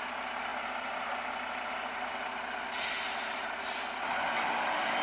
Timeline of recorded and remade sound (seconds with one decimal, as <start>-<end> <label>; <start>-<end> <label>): 0.0-5.0 recorded